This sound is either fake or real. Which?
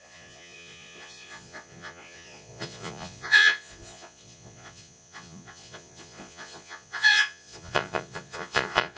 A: fake